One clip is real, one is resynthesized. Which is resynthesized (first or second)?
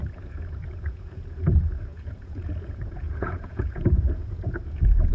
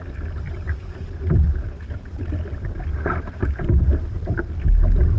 first